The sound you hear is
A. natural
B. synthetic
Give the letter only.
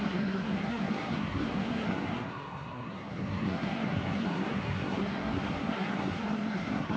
B